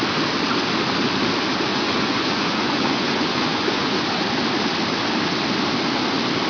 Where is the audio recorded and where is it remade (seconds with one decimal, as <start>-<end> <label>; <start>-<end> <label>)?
0.0-1.7 recorded; 1.7-4.0 remade; 4.0-6.5 recorded